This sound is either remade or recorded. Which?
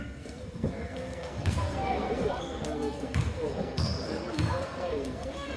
remade